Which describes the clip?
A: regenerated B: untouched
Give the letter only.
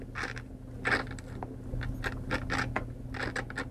B